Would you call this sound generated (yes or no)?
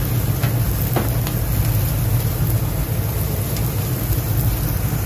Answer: no